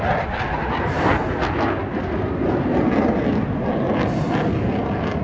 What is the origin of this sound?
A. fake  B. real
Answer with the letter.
B